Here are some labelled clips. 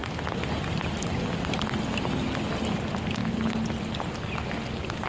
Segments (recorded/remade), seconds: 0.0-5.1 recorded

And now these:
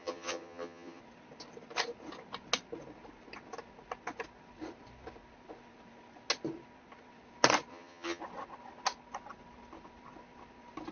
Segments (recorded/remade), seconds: 0.0-1.0 remade; 1.0-7.7 recorded; 7.7-8.2 remade; 8.2-10.9 recorded